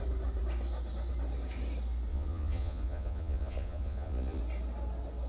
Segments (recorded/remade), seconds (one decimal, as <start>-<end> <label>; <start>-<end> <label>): 0.0-2.1 recorded; 2.1-4.4 remade; 4.4-5.3 recorded